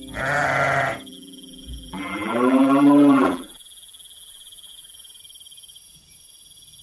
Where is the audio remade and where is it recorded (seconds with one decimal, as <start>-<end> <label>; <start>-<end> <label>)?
0.0-1.1 recorded; 1.1-5.2 remade; 5.2-6.8 recorded